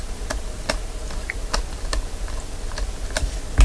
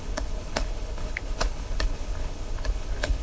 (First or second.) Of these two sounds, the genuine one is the first